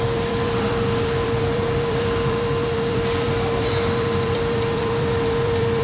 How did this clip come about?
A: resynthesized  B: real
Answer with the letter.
A